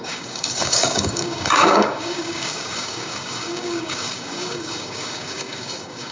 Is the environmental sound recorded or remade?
remade